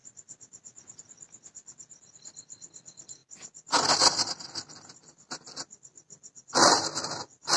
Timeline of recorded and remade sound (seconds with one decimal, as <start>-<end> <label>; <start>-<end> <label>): 0.0-7.6 recorded